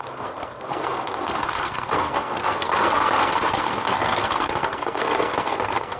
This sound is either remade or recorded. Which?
remade